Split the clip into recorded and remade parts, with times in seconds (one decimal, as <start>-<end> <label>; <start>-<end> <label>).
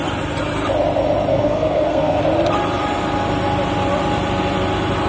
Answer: 0.0-1.3 recorded; 1.3-2.2 remade; 2.2-5.1 recorded